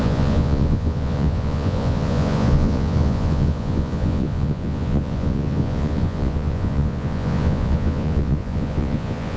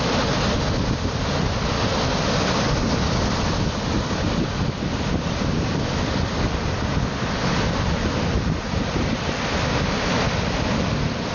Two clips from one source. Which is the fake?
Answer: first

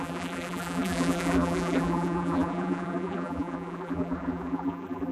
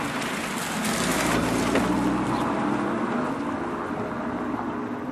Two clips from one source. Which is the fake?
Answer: first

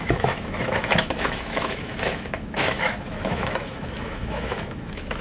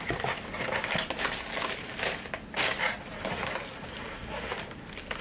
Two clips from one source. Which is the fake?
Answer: first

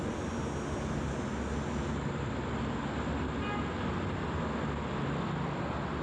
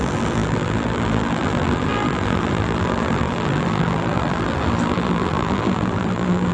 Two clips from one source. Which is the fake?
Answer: second